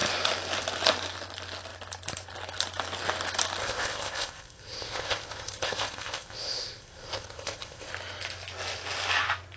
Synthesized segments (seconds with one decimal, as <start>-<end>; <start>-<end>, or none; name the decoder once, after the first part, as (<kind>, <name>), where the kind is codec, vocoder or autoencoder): 3.6-7.9 (codec, ZipCodec)